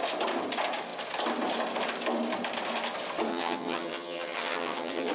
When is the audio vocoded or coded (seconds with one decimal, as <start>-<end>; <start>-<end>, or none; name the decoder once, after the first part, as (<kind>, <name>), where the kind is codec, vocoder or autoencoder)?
3.3-5.1 (vocoder, HiFi-GAN)